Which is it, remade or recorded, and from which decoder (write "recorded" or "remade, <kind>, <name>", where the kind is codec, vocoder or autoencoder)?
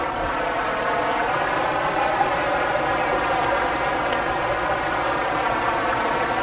recorded